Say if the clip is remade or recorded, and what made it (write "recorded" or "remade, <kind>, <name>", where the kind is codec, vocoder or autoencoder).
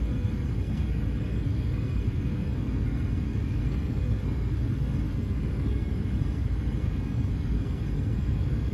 remade, codec, SNAC